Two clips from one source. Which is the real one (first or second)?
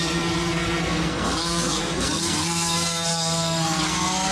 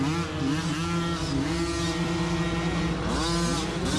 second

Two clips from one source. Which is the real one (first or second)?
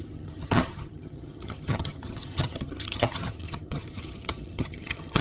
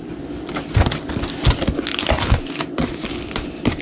second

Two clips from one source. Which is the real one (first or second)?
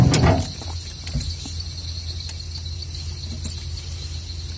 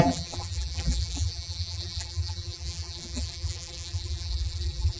first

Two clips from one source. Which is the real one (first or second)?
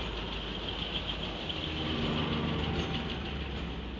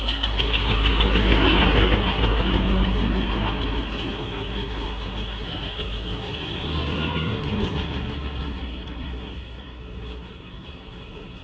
first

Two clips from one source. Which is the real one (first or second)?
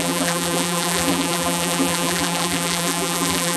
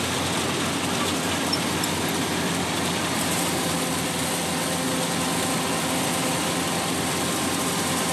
second